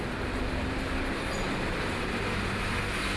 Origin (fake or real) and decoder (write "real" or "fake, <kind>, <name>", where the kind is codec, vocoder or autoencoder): real